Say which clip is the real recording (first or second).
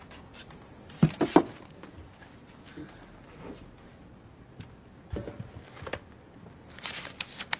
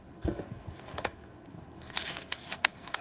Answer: first